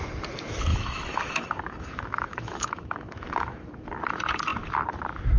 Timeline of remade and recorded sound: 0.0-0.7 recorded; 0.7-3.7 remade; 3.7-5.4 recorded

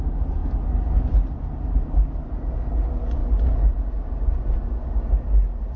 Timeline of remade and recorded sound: 0.0-5.8 recorded